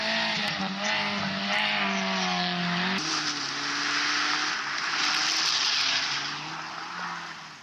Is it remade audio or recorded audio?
recorded